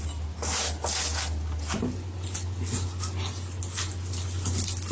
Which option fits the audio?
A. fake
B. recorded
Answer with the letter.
B